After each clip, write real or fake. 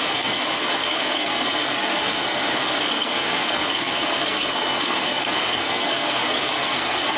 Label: fake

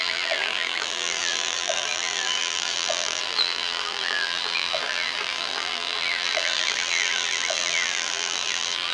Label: fake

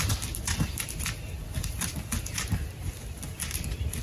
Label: real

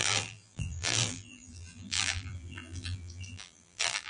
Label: fake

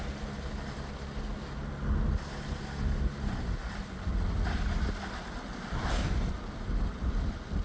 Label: real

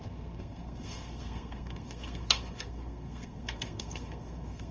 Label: fake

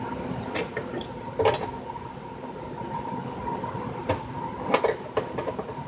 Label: real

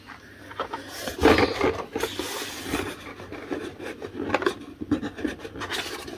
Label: real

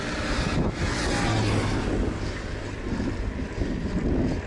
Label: real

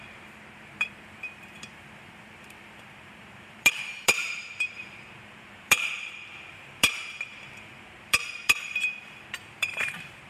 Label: fake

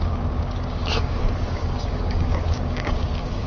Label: fake